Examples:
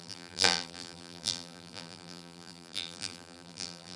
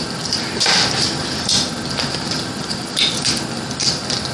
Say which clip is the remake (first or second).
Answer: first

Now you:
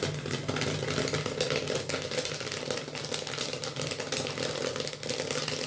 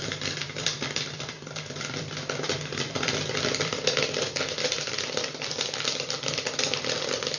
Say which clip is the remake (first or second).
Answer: second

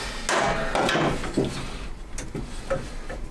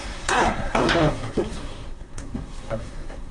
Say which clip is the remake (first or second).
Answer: second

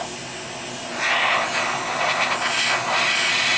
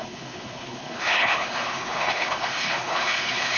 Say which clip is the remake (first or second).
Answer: second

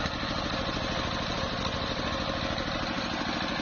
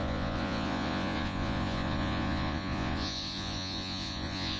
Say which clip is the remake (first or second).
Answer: second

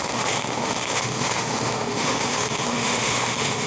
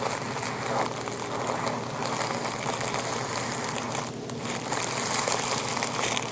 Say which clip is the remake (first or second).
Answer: first